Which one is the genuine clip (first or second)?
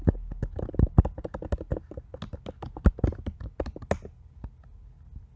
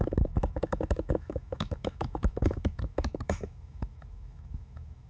first